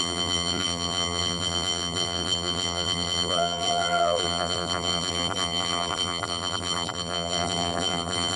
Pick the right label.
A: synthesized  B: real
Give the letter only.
A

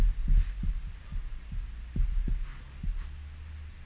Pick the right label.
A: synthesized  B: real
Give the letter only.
B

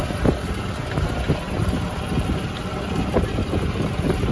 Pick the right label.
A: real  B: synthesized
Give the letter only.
A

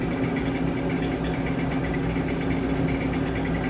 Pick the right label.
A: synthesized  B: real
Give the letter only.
B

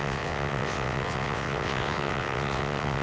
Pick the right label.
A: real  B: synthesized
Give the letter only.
B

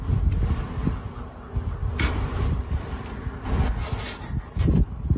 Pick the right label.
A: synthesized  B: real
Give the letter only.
B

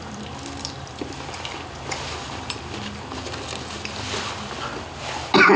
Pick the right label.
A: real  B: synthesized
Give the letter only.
A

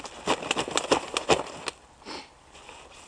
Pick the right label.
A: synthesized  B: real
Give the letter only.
B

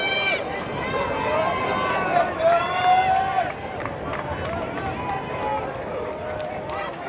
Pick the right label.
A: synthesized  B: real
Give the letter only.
B